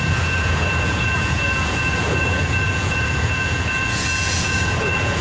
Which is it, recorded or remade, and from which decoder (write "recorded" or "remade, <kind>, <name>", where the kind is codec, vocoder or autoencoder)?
remade, vocoder, Vocos